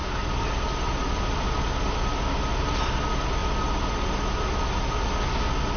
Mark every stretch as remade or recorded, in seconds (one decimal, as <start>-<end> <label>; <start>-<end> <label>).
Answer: 0.0-5.8 recorded